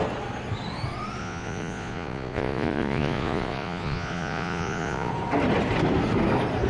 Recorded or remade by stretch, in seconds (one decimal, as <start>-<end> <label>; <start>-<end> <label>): 0.0-1.2 recorded; 1.2-5.1 remade; 5.1-6.7 recorded